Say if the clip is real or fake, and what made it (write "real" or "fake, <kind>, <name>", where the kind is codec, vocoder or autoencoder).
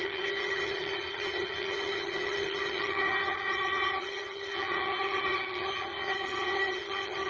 fake, vocoder, HiFi-GAN